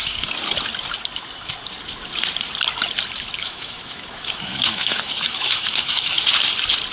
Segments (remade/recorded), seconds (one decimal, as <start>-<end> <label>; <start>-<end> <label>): 0.0-3.4 recorded; 3.4-6.3 remade; 6.3-6.9 recorded